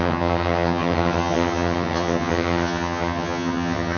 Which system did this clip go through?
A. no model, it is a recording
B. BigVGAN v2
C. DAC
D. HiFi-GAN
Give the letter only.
D